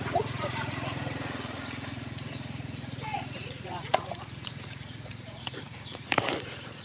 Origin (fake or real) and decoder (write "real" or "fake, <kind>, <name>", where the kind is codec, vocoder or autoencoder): fake, vocoder, Vocos